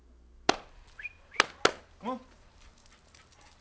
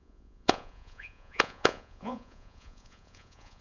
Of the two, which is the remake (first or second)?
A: second